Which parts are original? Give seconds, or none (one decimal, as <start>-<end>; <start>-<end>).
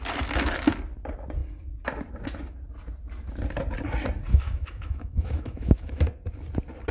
0.0-4.3; 6.0-6.9